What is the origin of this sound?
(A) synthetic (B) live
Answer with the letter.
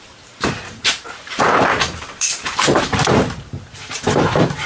A